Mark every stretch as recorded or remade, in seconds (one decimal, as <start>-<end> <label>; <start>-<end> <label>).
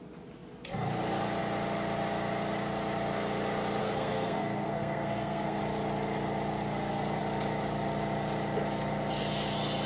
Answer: 0.0-3.8 recorded; 3.8-5.6 remade; 5.6-9.9 recorded